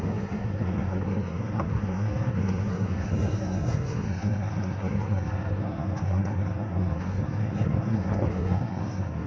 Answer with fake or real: fake